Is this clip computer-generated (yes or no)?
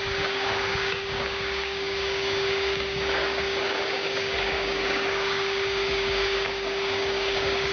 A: yes